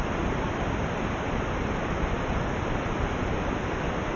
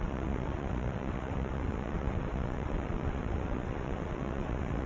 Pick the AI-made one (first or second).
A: second